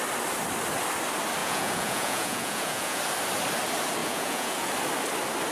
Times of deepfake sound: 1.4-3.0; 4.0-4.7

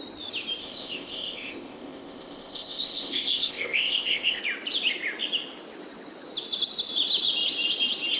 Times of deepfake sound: 0.6-4.4

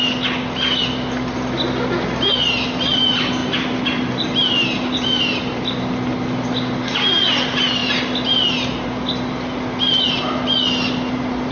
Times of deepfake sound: none

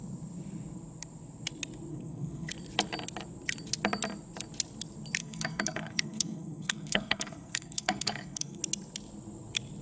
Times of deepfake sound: 1.9-2.5; 5.2-8.6

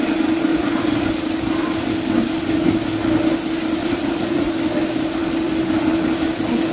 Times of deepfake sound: 0.5-1.0; 3.8-4.5

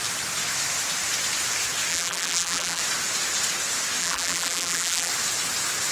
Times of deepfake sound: 1.9-2.8; 4.0-5.1

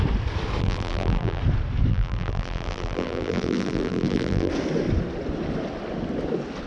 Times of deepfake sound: 0.6-1.4; 1.9-4.5

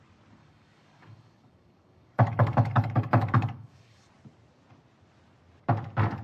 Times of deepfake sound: 0.4-4.1